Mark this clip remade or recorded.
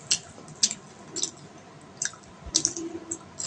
recorded